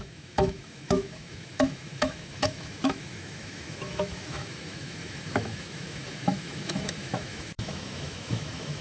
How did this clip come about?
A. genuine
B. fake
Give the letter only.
B